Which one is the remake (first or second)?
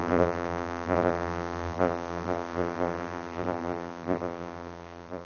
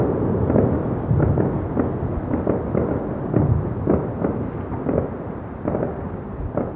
first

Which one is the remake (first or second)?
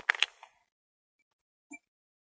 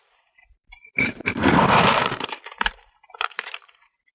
second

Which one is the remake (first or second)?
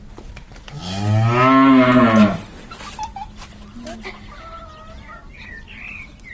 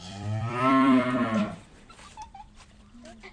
second